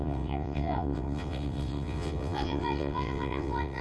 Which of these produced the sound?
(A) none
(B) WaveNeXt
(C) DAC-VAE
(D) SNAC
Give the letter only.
B